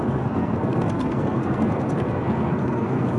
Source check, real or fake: fake